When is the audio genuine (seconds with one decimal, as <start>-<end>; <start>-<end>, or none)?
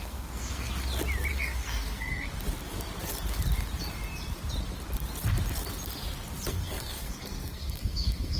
0.7-1.3; 2.3-6.5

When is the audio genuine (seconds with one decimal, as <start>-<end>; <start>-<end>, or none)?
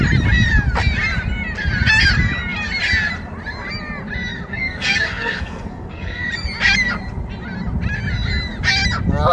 0.0-4.5; 6.3-9.3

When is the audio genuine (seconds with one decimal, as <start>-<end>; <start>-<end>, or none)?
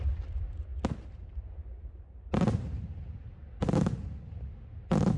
0.0-5.2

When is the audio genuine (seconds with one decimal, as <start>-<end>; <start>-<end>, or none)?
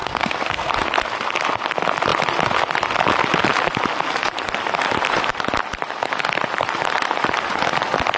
0.7-8.2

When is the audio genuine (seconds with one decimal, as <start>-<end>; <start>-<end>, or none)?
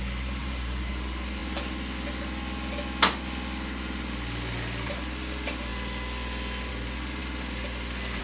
0.0-0.4; 0.9-8.2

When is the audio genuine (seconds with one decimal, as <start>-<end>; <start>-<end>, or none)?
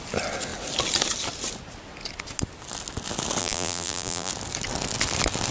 0.0-3.4; 4.3-5.5